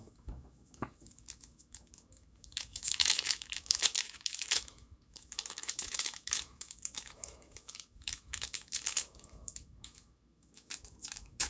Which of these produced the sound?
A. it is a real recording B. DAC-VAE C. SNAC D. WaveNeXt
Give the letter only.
B